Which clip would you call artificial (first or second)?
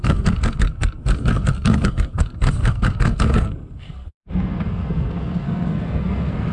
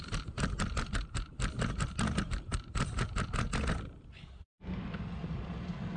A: first